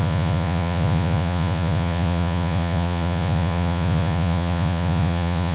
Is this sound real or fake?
fake